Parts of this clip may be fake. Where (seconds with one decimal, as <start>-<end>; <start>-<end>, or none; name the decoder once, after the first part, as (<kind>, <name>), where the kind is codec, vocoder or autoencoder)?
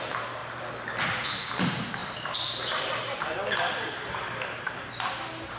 0.0-3.4 (vocoder, BigVGAN v2); 3.9-5.6